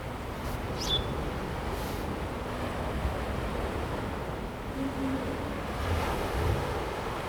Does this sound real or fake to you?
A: real